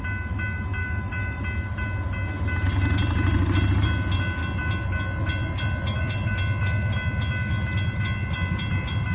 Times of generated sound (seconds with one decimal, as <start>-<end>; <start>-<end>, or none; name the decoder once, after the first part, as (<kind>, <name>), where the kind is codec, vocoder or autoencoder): 0.8-1.4 (autoencoder, DAC-VAE)